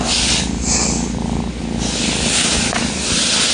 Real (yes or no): yes